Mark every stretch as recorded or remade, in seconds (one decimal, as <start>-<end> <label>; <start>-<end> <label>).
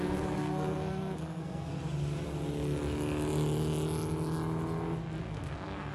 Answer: 0.0-1.7 remade; 1.7-5.2 recorded; 5.2-5.9 remade